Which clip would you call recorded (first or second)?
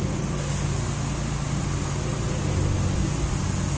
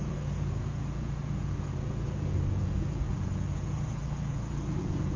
first